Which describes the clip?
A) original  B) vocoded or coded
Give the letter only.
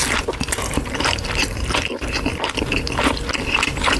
B